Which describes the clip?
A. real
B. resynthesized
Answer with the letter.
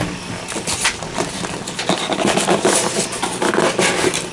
A